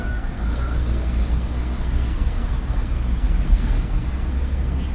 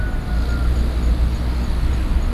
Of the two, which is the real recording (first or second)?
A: second